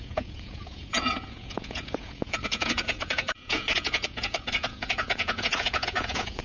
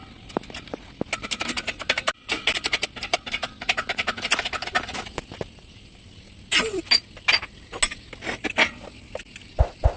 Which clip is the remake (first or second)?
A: first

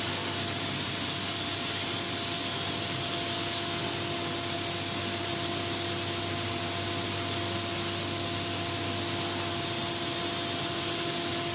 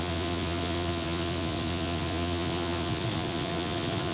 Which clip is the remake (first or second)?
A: second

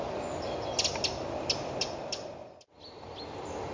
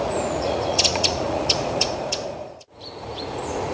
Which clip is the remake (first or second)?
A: second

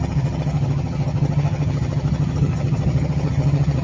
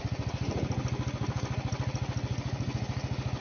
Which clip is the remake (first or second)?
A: first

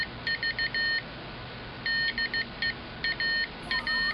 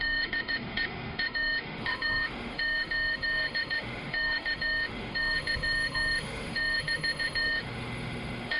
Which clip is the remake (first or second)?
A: second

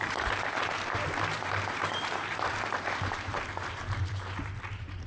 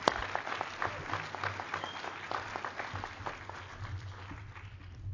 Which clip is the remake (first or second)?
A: first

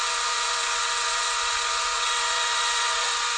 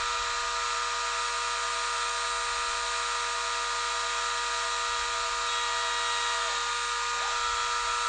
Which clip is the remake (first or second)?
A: first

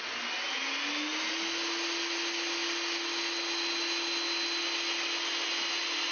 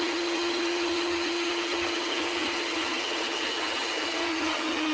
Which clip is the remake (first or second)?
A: second